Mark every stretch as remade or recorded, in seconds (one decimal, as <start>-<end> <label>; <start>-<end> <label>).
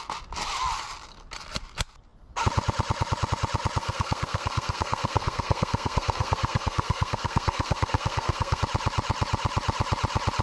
0.0-3.8 recorded; 3.8-8.6 remade; 8.6-10.4 recorded